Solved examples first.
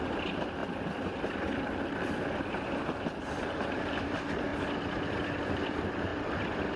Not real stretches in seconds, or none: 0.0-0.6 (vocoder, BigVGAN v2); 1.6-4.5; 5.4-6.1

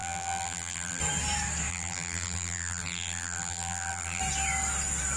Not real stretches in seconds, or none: 0.0-1.0 (vocoder, BigVGAN v2); 1.7-4.2

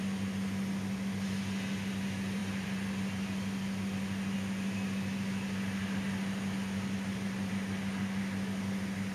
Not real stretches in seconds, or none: 2.4-7.5 (vocoder, BigVGAN v2)

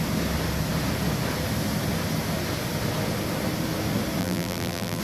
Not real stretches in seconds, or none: 4.2-5.0 (vocoder, BigVGAN v2)

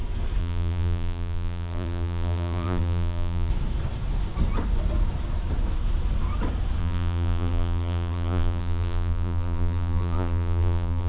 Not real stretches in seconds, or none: 0.4-3.5 (vocoder, BigVGAN v2); 6.8-11.1

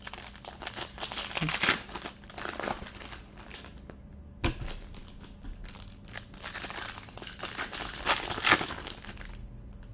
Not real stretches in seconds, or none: none

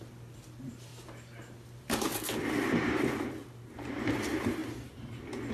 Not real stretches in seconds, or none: 0.0-0.9 (vocoder, BigVGAN v2); 1.8-3.4; 4.0-4.6

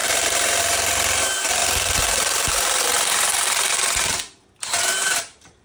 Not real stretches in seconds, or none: 0.0-1.6 (vocoder, BigVGAN v2); 5.0-5.6